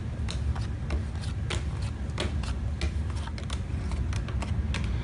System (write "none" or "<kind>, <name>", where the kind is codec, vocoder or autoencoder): none